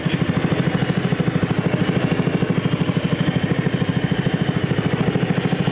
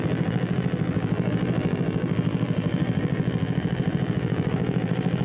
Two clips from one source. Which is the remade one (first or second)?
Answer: second